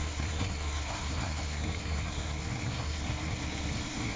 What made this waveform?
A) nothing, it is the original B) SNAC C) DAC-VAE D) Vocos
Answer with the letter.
B